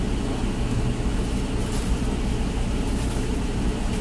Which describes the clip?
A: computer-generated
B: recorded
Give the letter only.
B